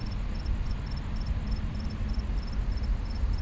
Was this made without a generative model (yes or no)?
yes